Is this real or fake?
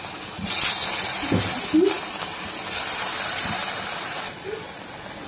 real